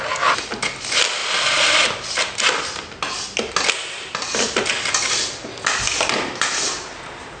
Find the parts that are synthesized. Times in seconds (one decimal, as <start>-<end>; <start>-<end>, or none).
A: none